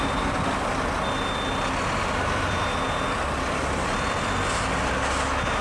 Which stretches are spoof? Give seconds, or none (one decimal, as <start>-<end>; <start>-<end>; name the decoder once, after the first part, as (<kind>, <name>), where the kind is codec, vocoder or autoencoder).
none